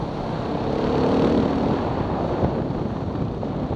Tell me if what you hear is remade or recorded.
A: recorded